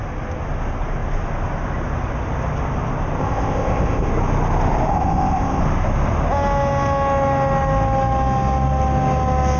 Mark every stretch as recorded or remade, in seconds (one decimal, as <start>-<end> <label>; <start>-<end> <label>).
0.0-3.2 recorded; 3.2-4.1 remade; 4.1-4.9 recorded; 4.9-5.6 remade; 5.6-9.6 recorded